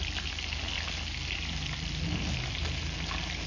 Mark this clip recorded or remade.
recorded